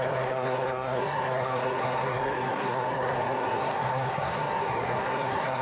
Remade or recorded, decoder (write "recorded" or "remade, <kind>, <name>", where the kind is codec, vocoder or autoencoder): remade, codec, SNAC